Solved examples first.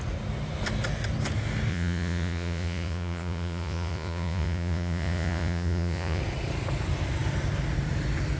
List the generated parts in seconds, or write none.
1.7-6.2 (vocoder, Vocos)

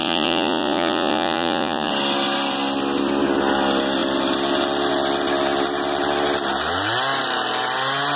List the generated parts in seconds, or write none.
0.0-1.9 (vocoder, Vocos)

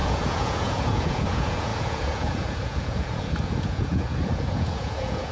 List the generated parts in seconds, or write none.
0.0-5.3 (vocoder, Vocos)